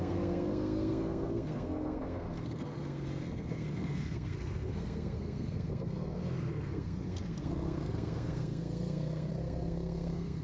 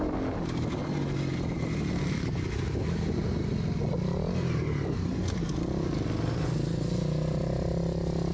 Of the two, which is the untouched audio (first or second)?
second